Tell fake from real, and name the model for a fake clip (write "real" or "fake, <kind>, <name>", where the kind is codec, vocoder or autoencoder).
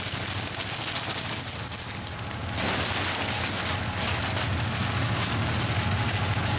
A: real